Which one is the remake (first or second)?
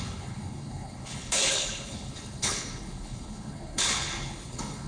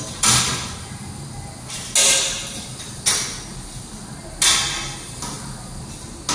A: first